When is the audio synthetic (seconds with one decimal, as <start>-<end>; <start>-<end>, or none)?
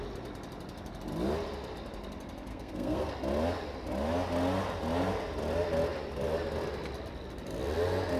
2.5-3.1